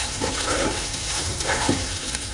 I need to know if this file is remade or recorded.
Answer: remade